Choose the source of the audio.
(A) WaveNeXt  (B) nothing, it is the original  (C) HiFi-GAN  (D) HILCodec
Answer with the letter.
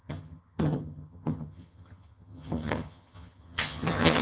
C